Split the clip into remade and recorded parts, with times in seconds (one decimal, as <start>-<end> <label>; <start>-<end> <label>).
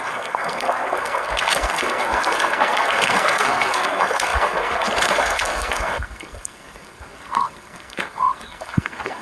0.0-9.2 remade